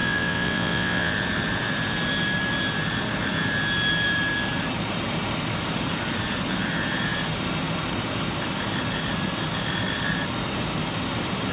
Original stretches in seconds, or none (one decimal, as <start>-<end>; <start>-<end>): 1.1-11.5

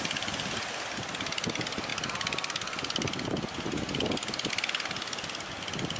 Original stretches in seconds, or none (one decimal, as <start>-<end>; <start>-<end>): 0.0-6.0